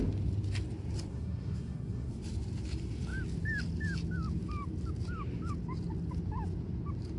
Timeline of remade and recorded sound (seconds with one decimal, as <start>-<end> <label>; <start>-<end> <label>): 0.0-1.1 recorded; 1.1-2.1 remade; 2.1-7.2 recorded